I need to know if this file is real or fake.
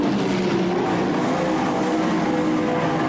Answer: real